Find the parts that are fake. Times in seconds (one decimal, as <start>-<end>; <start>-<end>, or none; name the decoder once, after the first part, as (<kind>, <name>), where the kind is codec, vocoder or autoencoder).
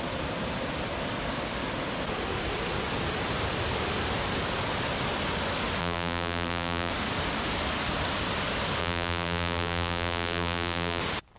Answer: 5.8-6.9 (vocoder, BigVGAN v2); 8.8-11.0